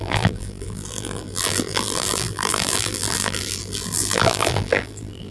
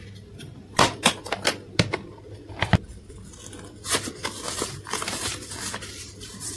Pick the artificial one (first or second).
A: first